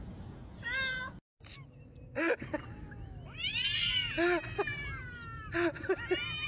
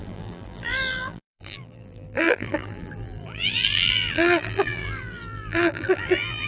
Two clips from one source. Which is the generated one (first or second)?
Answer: second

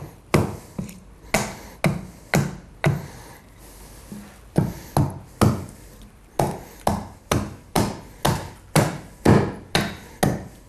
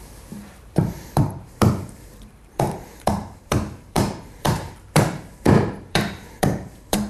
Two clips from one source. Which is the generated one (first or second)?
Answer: second